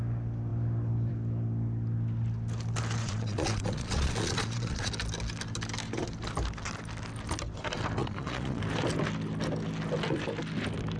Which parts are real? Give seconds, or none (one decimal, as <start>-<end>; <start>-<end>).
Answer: 0.0-3.0; 4.9-8.0; 8.6-11.0